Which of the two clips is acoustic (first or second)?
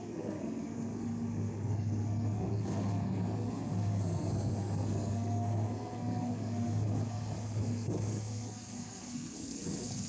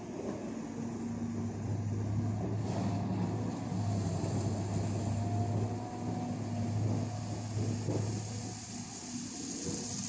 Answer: second